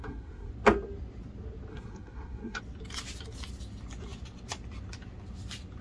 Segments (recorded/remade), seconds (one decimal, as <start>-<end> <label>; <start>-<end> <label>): 0.0-0.5 remade; 0.5-1.7 recorded; 1.7-2.6 remade; 2.6-5.8 recorded